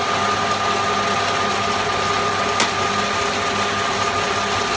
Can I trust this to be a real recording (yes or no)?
yes